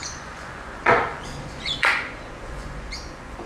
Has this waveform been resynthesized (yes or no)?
yes